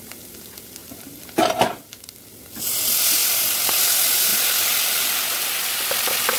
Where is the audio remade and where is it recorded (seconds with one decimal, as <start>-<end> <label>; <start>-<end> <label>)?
0.0-3.2 recorded; 3.2-3.7 remade; 3.7-4.3 recorded; 4.3-6.4 remade